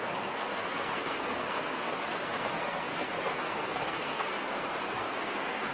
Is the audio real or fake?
fake